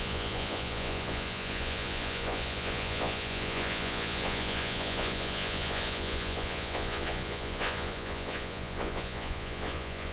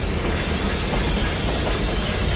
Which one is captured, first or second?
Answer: second